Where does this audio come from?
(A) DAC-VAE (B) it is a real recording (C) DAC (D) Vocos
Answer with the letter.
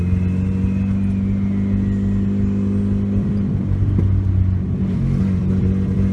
B